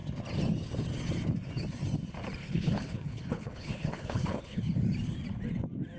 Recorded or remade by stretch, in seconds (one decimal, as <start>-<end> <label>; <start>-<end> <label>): 0.0-2.4 recorded; 2.4-4.6 remade; 4.6-6.0 recorded

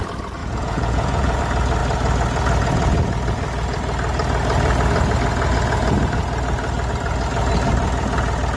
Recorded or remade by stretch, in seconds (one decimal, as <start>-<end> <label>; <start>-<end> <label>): 0.0-0.4 recorded; 0.4-1.4 remade; 1.4-8.6 recorded